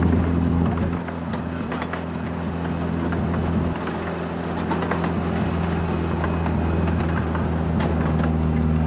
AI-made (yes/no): no